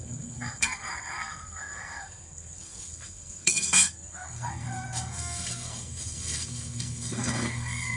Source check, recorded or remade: remade